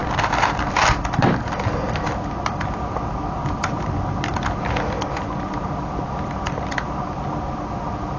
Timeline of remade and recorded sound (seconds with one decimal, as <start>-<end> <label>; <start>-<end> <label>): 0.0-8.2 recorded